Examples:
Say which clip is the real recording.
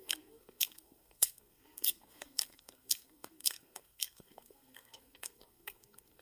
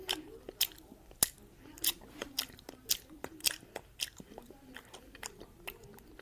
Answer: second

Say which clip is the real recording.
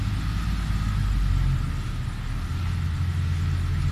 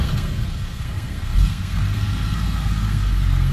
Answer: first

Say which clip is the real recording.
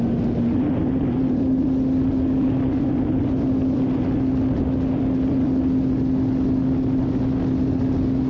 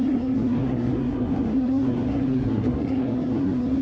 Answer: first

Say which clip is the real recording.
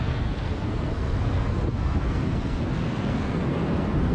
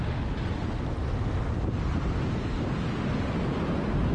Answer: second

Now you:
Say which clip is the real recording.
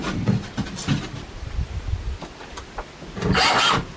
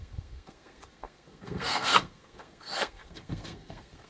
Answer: first